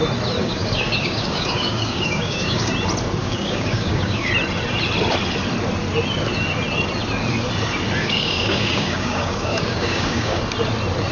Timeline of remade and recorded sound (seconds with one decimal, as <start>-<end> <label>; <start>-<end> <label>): 0.0-0.4 recorded; 0.4-2.7 remade; 2.7-3.2 recorded; 3.2-4.3 remade; 4.3-8.0 recorded; 8.0-10.4 remade; 10.4-11.1 recorded

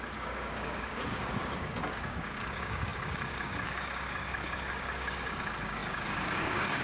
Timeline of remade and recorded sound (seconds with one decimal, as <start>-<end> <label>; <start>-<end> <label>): 0.0-6.8 remade